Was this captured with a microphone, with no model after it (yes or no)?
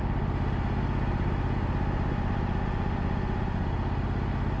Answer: yes